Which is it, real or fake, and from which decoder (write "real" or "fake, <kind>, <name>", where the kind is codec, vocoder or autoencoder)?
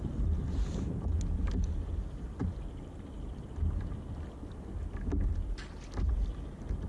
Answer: real